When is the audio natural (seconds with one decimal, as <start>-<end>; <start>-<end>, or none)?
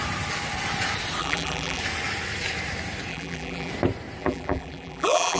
0.0-1.2; 1.8-3.1; 3.7-4.2